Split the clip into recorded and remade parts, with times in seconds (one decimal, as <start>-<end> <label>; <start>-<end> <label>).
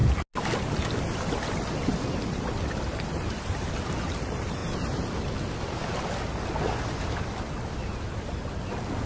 0.0-9.1 recorded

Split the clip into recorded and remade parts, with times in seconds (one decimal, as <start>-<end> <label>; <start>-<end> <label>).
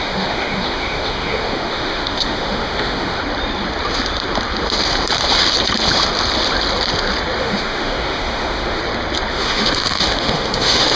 0.0-3.2 remade; 3.2-7.4 recorded; 7.4-8.8 remade; 8.8-9.3 recorded; 9.3-11.0 remade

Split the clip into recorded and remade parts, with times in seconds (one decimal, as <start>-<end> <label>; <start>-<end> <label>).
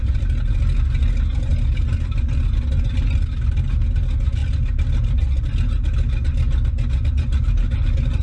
0.0-8.2 recorded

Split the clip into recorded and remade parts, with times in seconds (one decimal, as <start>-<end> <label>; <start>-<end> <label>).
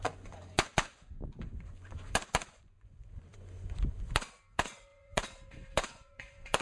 0.0-6.6 remade